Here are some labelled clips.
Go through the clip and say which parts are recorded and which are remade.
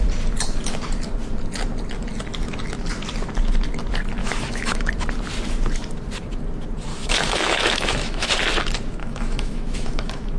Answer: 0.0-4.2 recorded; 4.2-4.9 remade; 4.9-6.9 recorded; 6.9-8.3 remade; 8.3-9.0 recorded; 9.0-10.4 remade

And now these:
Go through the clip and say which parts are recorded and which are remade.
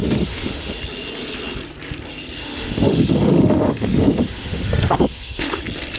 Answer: 0.0-0.8 remade; 0.8-2.4 recorded; 2.4-5.6 remade; 5.6-6.0 recorded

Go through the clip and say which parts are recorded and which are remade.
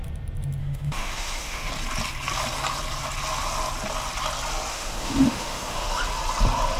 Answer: 0.0-0.6 recorded; 0.6-1.7 remade; 1.7-4.7 recorded; 4.7-6.0 remade; 6.0-6.8 recorded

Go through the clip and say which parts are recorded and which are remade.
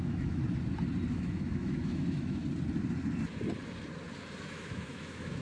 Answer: 0.0-0.4 remade; 0.4-1.1 recorded; 1.1-2.4 remade; 2.4-4.4 recorded; 4.4-5.4 remade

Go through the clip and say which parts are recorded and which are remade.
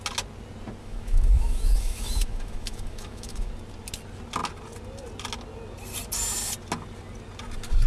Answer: 0.0-0.8 recorded; 0.8-3.5 remade; 3.5-7.9 recorded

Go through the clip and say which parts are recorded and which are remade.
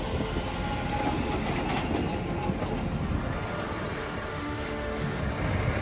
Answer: 0.0-4.3 recorded; 4.3-5.2 remade; 5.2-5.8 recorded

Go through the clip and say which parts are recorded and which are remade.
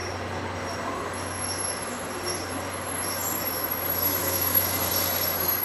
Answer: 0.0-4.2 recorded; 4.2-4.9 remade; 4.9-5.6 recorded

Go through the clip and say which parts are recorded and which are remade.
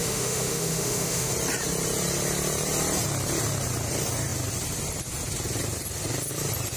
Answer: 0.0-1.3 remade; 1.3-6.8 recorded